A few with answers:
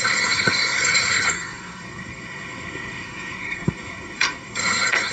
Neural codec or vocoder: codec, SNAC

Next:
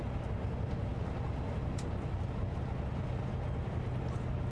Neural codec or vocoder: none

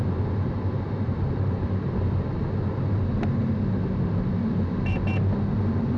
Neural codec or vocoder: none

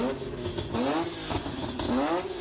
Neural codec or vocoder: none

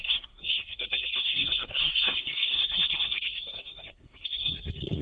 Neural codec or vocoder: codec, SNAC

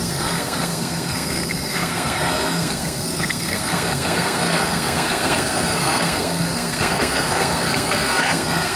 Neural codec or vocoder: codec, SNAC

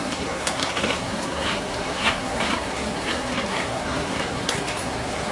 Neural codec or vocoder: codec, SNAC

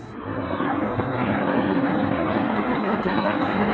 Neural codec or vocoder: codec, SNAC